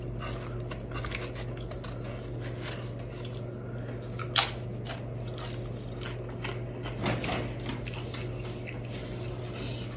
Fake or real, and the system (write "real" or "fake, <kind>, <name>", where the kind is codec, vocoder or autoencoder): real